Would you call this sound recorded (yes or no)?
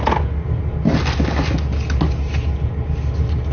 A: yes